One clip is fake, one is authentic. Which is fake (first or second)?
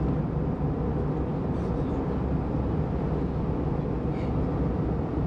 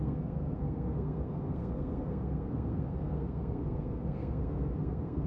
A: second